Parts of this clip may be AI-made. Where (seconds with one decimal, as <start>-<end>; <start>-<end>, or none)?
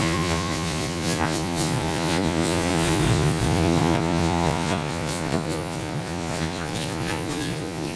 0.0-8.0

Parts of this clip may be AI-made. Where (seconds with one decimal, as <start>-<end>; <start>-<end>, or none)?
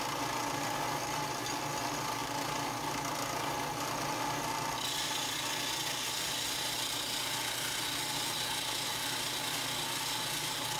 none